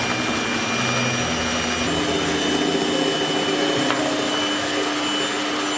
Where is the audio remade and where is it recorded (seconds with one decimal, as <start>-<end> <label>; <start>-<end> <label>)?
0.0-5.8 recorded